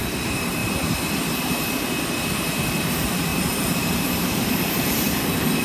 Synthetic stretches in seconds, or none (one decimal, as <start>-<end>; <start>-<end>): 0.0-0.6; 2.8-5.6